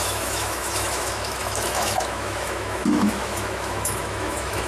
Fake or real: fake